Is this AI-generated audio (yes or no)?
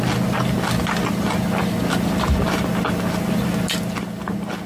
no